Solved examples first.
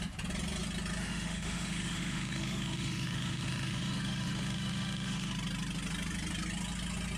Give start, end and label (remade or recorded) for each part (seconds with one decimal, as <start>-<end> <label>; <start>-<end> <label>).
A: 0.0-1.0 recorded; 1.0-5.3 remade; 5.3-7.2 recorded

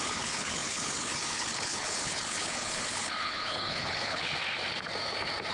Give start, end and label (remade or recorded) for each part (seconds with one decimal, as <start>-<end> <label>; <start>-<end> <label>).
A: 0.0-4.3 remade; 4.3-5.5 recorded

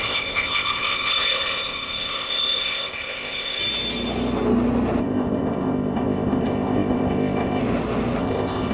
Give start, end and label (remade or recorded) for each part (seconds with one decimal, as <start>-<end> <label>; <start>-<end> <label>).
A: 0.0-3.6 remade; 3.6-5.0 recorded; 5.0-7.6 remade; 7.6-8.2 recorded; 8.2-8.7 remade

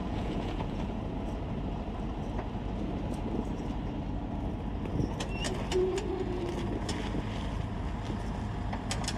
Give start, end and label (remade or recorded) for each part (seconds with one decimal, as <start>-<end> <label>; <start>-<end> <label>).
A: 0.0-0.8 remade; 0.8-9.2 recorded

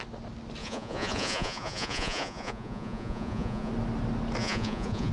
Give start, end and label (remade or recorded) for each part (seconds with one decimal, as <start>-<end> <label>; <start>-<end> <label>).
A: 0.0-0.6 recorded; 0.6-3.7 remade; 3.7-4.4 recorded; 4.4-5.1 remade

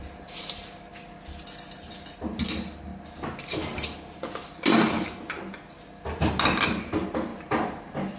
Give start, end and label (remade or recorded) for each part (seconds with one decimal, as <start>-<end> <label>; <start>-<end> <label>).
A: 0.0-8.2 recorded

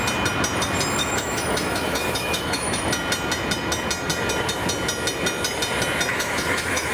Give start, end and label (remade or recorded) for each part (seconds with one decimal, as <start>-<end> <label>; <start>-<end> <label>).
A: 0.0-1.0 recorded; 1.0-2.8 remade; 2.8-6.1 recorded; 6.1-6.9 remade

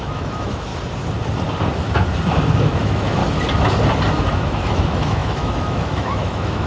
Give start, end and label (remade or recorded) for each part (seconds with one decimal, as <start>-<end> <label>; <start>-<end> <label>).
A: 0.0-0.7 remade; 0.7-2.6 recorded; 2.6-3.2 remade; 3.2-4.2 recorded; 4.2-6.7 remade